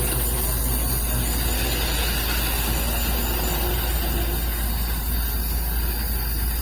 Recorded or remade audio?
recorded